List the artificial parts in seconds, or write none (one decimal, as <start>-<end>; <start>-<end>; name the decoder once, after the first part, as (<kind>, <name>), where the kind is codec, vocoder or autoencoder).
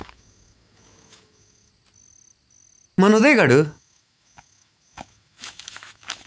0.0-1.7 (autoencoder, DAC-VAE); 3.5-6.3